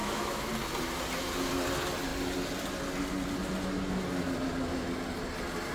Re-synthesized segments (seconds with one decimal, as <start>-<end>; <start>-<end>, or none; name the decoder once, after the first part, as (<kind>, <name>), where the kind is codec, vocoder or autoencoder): 0.0-0.5 (autoencoder, DAC-VAE)